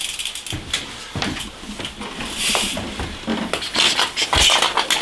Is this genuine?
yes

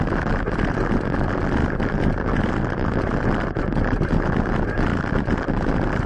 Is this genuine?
yes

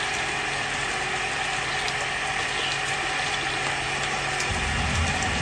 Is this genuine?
yes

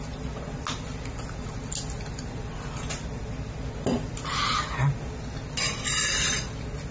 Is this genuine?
yes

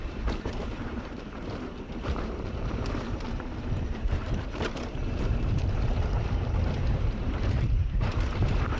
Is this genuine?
no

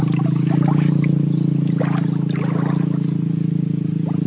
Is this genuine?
yes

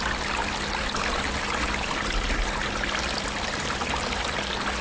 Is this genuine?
yes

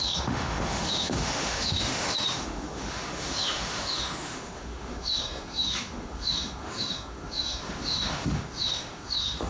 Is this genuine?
no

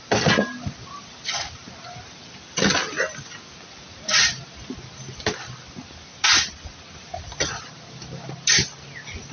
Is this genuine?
yes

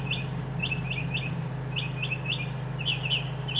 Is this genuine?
yes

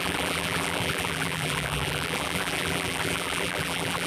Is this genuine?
no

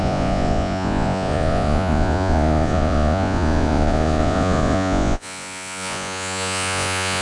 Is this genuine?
no